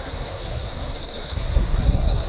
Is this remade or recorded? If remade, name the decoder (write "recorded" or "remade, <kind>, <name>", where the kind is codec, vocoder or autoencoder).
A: remade, codec, SNAC